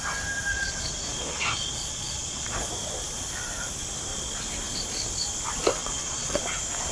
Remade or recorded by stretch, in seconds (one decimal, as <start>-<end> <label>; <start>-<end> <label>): 0.0-0.5 recorded; 0.5-2.7 remade; 2.7-5.8 recorded; 5.8-6.4 remade; 6.4-6.9 recorded